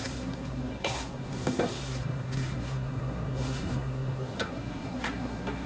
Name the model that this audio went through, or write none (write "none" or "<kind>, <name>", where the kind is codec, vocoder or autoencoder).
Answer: codec, SNAC